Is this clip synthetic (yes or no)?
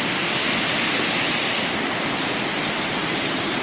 yes